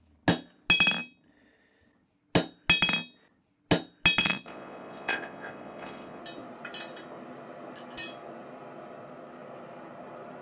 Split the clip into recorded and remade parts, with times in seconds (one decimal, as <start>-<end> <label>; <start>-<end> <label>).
0.0-4.2 recorded; 4.2-6.2 remade; 6.2-10.4 recorded